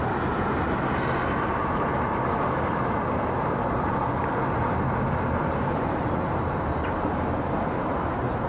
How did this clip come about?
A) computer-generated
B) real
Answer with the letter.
A